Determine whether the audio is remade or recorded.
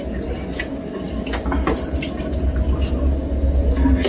recorded